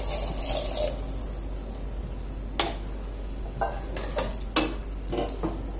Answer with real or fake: real